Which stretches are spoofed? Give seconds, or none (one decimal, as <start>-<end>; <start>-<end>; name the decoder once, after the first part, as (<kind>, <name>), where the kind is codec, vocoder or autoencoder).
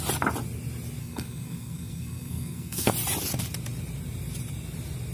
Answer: 1.0-2.9 (codec, SNAC)